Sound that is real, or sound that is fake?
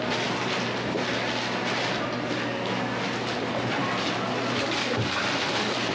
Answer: real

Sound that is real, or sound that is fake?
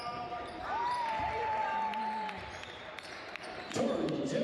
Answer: fake